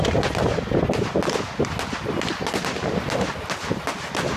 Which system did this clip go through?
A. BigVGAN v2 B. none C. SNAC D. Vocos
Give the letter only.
B